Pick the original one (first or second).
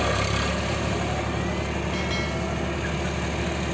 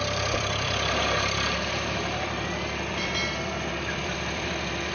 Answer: first